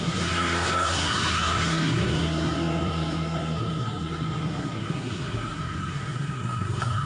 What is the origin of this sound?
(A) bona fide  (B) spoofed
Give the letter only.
B